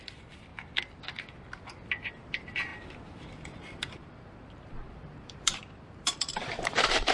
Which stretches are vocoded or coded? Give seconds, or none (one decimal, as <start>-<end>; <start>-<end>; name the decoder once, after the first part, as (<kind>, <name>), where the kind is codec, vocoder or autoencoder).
0.0-0.5 (vocoder, BigVGAN v2); 2.1-7.1